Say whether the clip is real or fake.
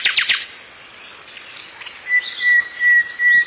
real